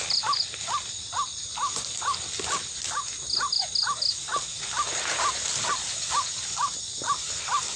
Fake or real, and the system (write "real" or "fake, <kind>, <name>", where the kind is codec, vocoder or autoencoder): real